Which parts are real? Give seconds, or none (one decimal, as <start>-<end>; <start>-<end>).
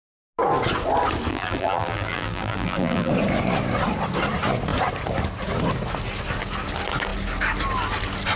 0.0-1.3; 3.1-8.4